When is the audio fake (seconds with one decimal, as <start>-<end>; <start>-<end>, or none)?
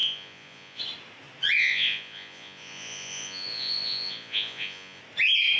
0.0-0.8; 1.6-5.0